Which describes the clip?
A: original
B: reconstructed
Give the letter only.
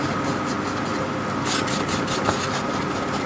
A